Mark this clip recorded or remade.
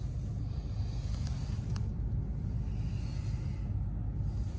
recorded